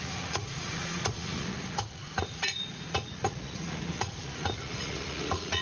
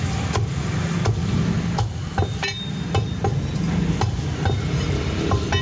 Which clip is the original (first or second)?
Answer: second